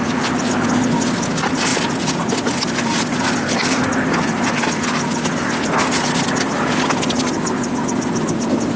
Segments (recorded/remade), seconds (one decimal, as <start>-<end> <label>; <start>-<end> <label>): 0.0-8.8 recorded